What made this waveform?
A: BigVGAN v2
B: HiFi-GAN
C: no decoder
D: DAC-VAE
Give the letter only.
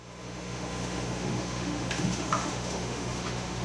D